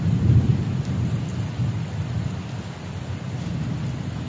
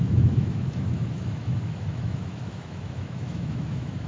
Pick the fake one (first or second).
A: second